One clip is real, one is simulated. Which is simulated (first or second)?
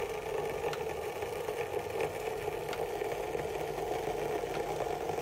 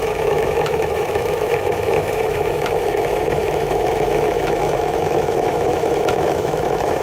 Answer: second